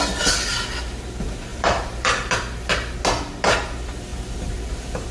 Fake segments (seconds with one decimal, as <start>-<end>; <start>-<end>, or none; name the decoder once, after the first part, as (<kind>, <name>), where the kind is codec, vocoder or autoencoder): 1.5-2.3 (vocoder, BigVGAN v2)